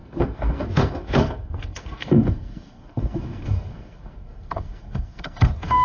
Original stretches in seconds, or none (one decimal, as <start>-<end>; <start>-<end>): none